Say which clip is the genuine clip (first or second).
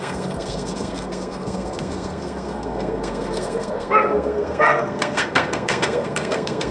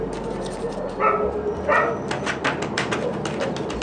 second